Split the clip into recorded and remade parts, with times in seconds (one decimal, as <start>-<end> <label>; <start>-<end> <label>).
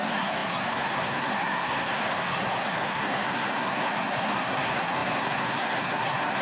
0.0-6.4 remade